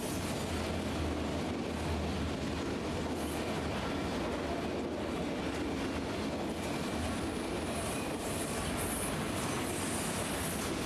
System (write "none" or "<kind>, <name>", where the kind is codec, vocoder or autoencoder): none